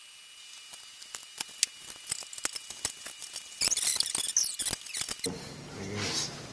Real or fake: real